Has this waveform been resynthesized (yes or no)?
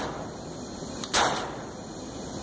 no